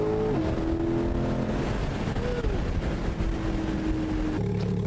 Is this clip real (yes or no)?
yes